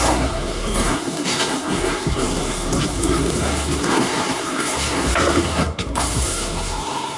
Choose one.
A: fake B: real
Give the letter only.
A